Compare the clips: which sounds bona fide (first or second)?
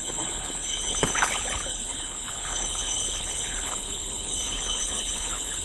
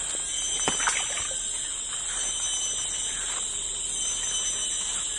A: second